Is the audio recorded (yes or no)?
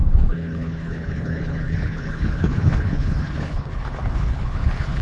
no